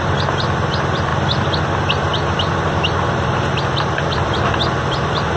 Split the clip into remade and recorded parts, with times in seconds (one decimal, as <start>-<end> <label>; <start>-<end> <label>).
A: 0.0-5.4 recorded